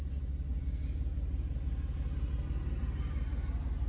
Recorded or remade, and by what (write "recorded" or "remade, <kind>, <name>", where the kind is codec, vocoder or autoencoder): recorded